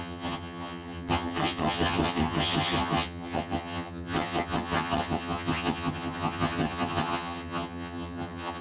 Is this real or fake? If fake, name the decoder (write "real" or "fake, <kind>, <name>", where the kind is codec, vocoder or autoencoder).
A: fake, vocoder, HiFi-GAN